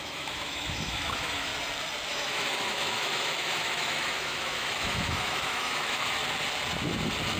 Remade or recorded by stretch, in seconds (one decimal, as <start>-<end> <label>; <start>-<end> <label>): 0.0-1.5 remade; 1.5-2.1 recorded; 2.1-6.2 remade; 6.2-7.4 recorded